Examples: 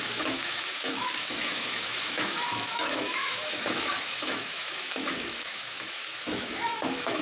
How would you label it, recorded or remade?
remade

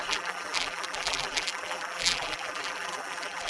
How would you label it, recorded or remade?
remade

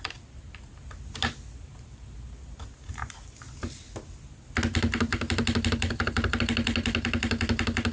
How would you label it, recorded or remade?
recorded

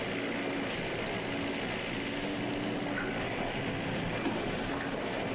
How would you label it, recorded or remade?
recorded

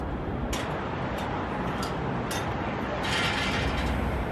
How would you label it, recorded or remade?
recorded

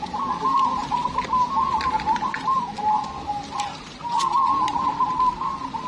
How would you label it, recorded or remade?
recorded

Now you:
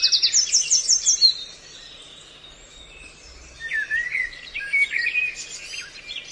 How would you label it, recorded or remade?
recorded